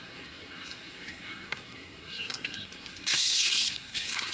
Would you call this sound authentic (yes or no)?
no